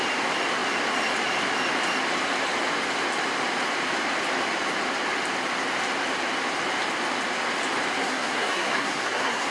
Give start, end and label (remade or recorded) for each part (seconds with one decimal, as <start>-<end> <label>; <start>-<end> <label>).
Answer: 0.0-8.0 recorded; 8.0-9.5 remade